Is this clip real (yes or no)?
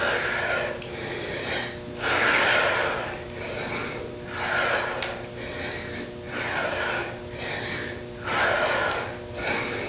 yes